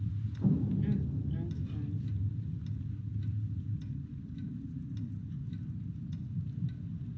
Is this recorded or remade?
recorded